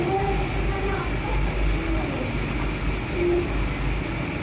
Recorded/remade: recorded